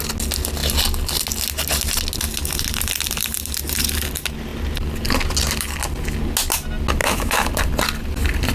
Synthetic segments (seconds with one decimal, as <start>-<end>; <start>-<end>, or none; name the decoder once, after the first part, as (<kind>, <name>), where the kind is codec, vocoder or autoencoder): 7.0-7.5 (autoencoder, DAC-VAE)